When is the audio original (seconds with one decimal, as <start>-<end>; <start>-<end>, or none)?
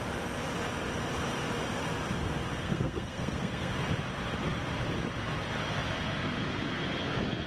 0.0-2.6; 3.7-7.5